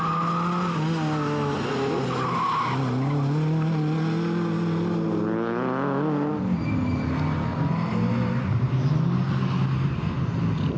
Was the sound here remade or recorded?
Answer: recorded